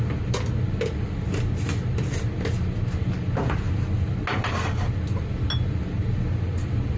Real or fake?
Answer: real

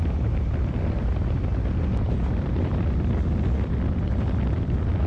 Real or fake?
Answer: real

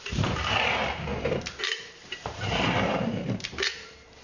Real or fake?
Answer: fake